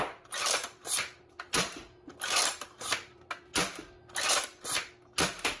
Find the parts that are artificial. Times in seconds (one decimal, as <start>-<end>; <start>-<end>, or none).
0.0-1.8; 2.9-3.5

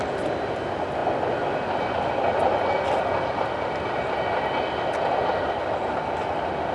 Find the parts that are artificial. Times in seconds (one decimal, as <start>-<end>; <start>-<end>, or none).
none

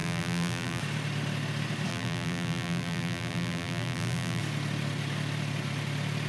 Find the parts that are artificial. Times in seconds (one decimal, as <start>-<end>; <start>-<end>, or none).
0.0-0.8; 1.9-4.4

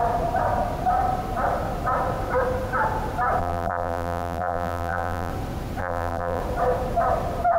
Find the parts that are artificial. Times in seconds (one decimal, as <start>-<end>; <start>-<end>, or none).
3.4-5.3; 5.8-6.4

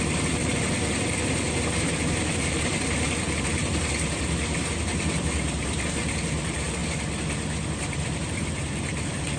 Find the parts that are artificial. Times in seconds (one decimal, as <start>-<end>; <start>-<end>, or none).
0.0-6.8; 7.8-9.4

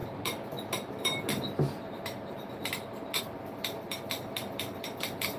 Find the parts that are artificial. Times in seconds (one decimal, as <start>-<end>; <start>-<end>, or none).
none